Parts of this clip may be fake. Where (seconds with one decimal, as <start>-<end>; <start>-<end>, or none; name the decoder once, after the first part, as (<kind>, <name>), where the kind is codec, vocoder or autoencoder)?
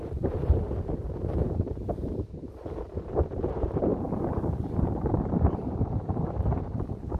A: 0.0-3.9 (vocoder, BigVGAN v2); 4.5-7.2